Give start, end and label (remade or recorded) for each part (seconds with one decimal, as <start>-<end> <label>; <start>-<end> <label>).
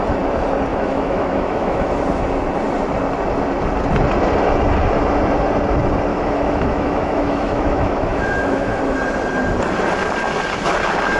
0.0-0.7 recorded; 0.7-2.0 remade; 2.0-6.1 recorded; 6.1-8.8 remade; 8.8-11.2 recorded